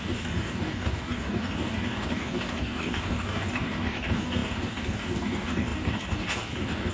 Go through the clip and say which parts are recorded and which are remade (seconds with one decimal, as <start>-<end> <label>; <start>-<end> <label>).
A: 0.0-6.9 remade